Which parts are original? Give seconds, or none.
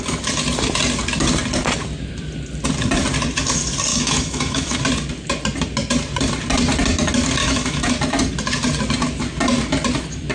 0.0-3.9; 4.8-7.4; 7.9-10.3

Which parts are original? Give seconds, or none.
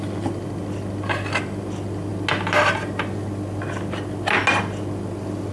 0.0-5.5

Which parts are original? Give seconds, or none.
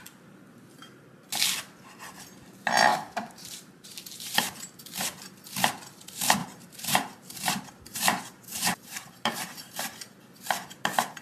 0.0-2.9; 4.6-6.4; 10.2-11.2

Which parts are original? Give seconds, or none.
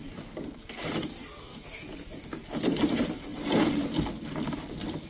0.0-1.5; 2.2-5.1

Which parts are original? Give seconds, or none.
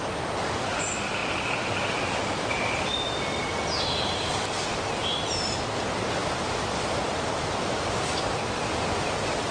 0.0-9.5